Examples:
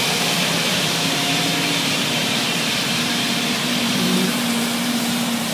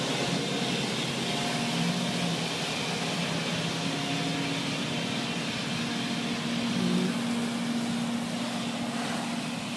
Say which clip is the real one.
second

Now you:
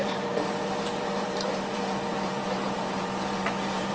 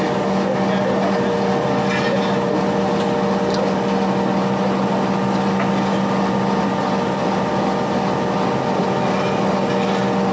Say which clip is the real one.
second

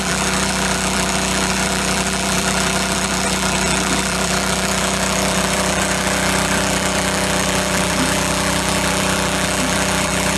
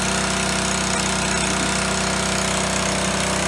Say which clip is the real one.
second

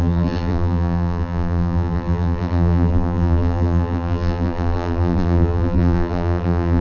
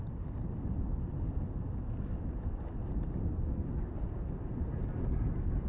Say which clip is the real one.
second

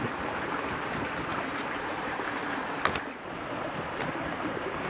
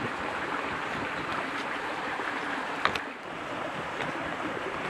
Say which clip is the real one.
first